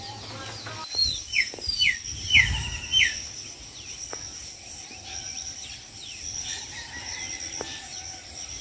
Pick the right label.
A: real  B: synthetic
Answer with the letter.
A